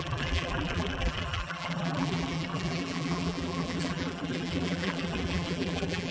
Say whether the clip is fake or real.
fake